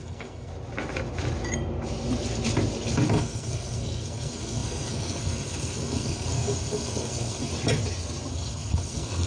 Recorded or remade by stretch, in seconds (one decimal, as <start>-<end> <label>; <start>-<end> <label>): 0.0-0.5 remade; 0.5-3.1 recorded; 3.1-7.5 remade; 7.5-8.3 recorded; 8.3-9.3 remade